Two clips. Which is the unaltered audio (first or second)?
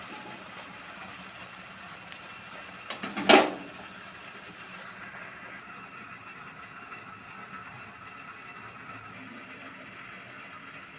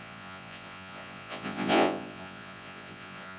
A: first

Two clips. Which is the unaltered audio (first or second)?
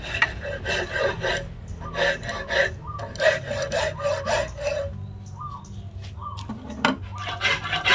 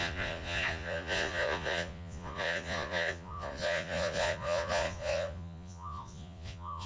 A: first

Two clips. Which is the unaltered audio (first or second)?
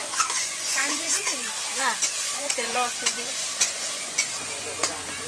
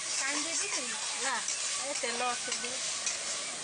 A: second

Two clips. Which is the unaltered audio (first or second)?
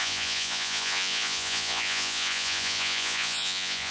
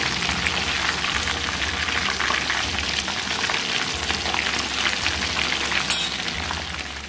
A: second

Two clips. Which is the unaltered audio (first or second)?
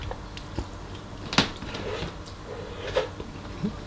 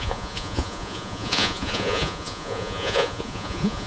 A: first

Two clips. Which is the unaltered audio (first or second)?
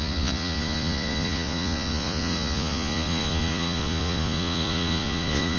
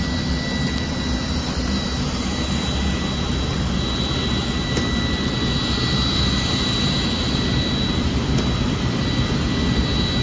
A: second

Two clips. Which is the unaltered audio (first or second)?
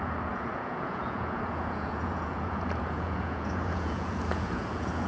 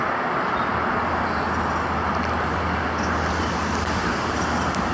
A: second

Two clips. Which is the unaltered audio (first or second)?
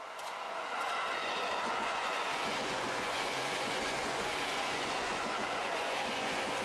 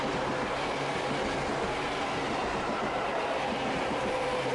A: second